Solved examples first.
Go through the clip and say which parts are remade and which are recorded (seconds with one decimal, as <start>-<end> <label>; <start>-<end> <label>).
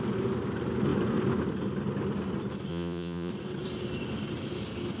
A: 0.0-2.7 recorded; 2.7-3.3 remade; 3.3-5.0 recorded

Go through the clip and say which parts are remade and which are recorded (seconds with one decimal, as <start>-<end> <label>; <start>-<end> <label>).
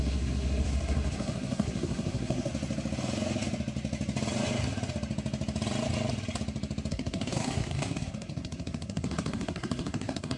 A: 0.0-2.5 remade; 2.5-6.9 recorded; 6.9-10.4 remade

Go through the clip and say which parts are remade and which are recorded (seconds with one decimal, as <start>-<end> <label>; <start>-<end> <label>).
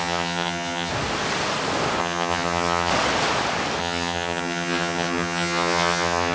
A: 0.0-0.9 remade; 0.9-2.0 recorded; 2.0-2.9 remade; 2.9-3.8 recorded; 3.8-6.3 remade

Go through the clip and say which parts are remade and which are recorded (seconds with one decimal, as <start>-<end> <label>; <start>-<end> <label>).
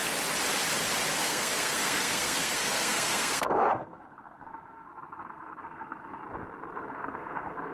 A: 0.0-1.2 recorded; 1.2-6.2 remade; 6.2-6.8 recorded; 6.8-7.7 remade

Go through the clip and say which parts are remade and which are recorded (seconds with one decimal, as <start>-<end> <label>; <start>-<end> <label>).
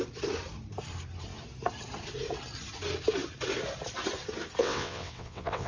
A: 0.0-4.6 recorded; 4.6-5.7 remade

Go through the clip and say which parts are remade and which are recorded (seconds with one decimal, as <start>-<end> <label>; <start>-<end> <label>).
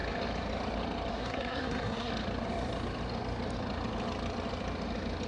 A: 0.0-1.1 recorded; 1.1-2.1 remade; 2.1-5.3 recorded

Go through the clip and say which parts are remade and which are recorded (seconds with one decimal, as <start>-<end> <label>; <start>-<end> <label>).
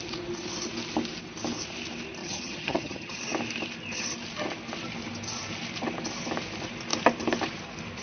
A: 0.0-2.2 recorded; 2.2-3.2 remade; 3.2-8.0 recorded